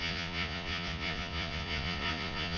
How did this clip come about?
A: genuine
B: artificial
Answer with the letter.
B